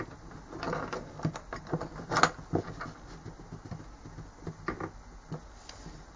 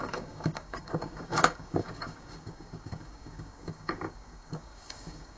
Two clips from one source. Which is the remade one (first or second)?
second